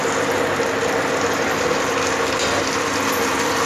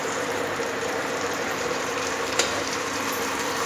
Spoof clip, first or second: second